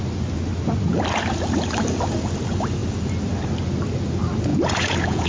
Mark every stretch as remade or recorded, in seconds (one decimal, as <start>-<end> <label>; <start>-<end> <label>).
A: 0.0-4.5 recorded; 4.5-5.3 remade